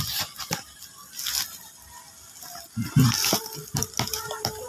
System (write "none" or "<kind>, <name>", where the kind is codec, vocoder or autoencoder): none